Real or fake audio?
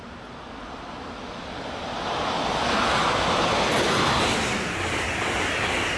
real